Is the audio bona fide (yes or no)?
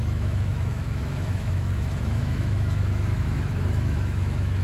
no